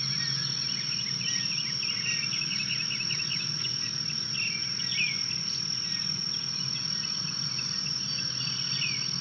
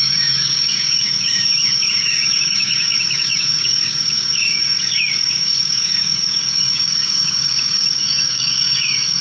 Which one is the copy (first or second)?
second